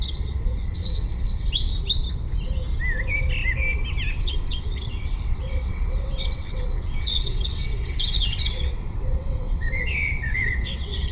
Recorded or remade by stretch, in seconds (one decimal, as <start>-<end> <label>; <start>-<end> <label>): 0.0-1.7 remade; 1.7-4.1 recorded; 4.1-11.1 remade